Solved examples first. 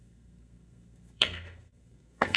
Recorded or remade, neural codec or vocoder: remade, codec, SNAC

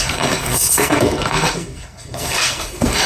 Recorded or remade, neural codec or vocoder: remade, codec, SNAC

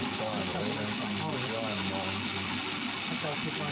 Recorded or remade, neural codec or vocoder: recorded